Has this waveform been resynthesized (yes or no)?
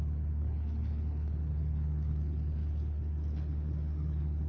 yes